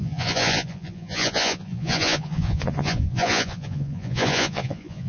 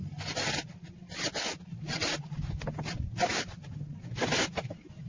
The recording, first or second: second